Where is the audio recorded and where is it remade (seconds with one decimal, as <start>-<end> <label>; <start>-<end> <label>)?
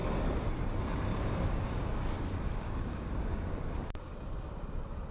0.0-1.1 recorded; 1.1-4.2 remade; 4.2-5.1 recorded